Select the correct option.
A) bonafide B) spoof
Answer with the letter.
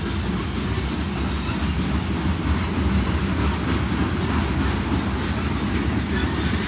A